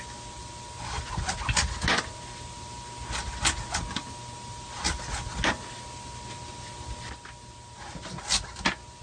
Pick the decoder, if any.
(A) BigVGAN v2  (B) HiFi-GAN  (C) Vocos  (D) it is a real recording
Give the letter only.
D